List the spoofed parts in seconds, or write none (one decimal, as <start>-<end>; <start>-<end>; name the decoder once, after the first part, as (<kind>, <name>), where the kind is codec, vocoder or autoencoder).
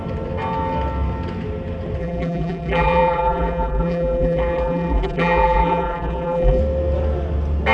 2.0-6.6 (vocoder, BigVGAN v2)